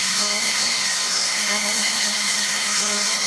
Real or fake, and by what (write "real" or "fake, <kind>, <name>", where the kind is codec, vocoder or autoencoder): fake, codec, SNAC